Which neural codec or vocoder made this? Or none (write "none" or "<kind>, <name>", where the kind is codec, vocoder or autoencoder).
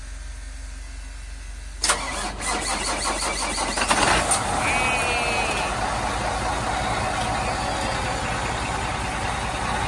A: none